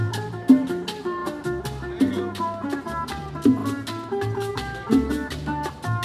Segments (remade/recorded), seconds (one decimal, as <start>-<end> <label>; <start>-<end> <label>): 0.0-1.2 remade; 1.2-2.1 recorded; 2.1-3.6 remade; 3.6-4.5 recorded; 4.5-6.0 remade